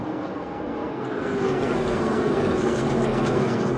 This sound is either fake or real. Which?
fake